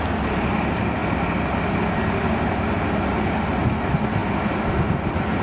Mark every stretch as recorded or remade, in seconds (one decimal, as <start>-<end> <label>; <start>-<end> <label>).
0.0-1.0 recorded; 1.0-3.1 remade; 3.1-4.2 recorded; 4.2-5.4 remade